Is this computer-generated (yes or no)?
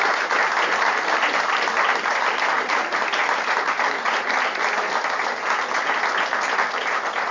no